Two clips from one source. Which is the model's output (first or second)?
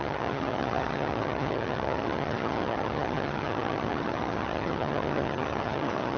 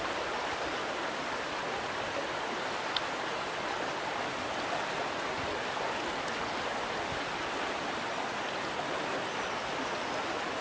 first